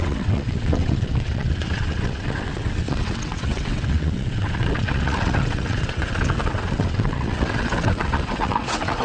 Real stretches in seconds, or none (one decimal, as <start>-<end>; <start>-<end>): none